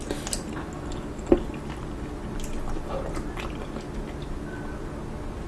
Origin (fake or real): real